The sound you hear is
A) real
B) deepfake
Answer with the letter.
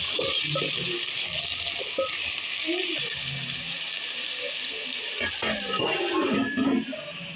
A